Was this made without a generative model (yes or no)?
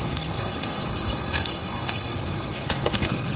no